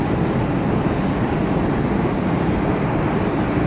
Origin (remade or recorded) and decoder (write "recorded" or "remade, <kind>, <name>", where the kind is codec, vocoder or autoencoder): recorded